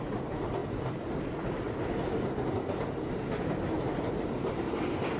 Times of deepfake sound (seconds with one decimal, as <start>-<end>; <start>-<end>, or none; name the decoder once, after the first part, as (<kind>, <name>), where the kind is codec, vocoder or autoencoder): none